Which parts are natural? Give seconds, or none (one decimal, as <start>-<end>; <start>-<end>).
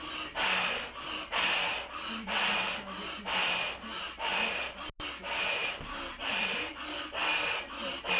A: 0.0-8.2